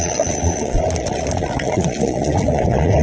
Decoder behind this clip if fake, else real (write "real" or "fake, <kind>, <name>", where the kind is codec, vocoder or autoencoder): fake, vocoder, Vocos